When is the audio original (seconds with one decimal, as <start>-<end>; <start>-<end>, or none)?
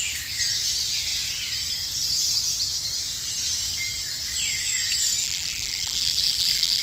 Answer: 0.0-5.2